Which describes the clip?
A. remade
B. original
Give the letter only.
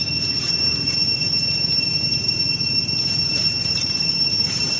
A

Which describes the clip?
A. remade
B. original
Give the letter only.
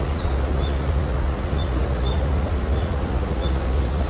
A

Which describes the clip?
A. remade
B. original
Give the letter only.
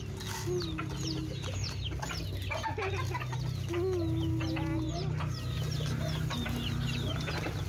B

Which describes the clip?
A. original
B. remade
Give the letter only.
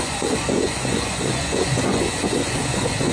B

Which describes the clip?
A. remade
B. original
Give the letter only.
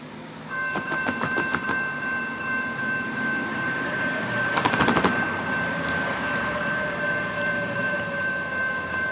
A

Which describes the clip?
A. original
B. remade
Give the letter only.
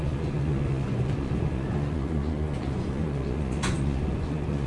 B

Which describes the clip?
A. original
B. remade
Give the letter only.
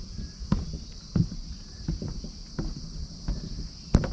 A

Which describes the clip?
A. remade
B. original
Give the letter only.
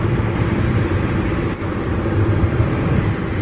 B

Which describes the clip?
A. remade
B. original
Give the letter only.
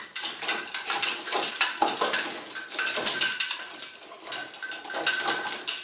B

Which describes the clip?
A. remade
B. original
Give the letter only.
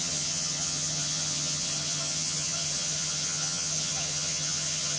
A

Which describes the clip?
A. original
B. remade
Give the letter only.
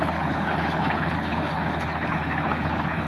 B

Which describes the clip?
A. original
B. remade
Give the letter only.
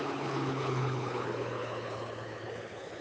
B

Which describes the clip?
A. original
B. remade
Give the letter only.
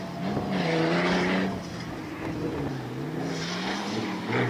A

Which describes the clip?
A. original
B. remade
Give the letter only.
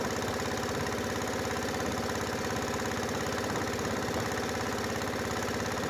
A